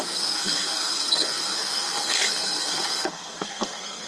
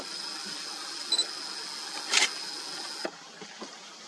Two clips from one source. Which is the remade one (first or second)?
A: first